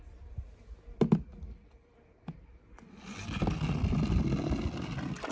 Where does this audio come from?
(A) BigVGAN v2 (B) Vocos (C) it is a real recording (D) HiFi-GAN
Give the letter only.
C